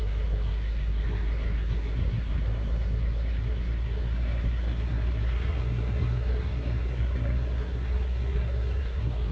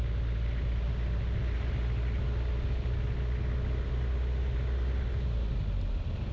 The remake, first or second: first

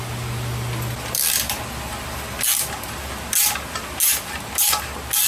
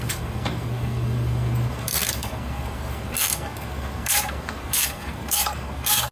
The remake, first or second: second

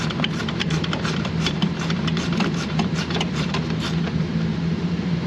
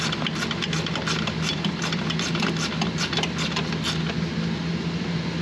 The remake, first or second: first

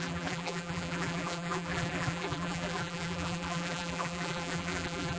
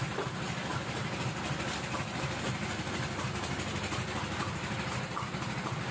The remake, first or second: first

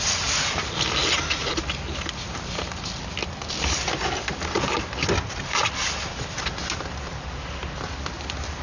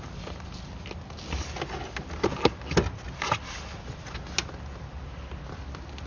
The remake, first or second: first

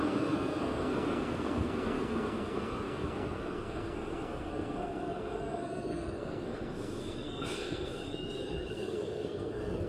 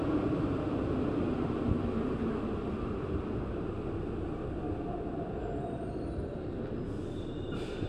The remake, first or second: first